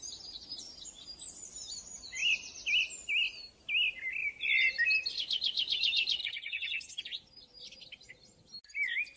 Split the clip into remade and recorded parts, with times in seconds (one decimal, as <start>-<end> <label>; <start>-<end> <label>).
0.0-6.2 recorded; 6.2-7.0 remade; 7.0-9.2 recorded